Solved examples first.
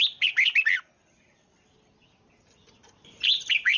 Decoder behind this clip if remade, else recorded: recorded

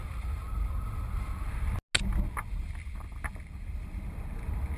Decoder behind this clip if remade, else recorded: recorded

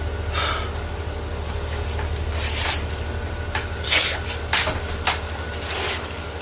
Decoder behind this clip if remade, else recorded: recorded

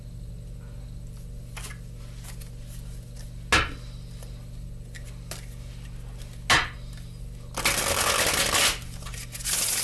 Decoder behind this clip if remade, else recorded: recorded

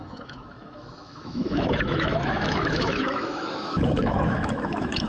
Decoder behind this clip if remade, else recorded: remade, autoencoder, DAC-VAE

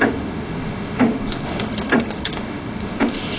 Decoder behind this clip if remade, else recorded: remade, autoencoder, DAC-VAE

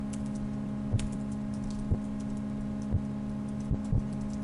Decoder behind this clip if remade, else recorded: recorded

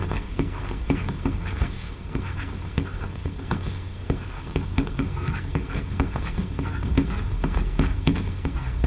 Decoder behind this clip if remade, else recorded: remade, codec, SNAC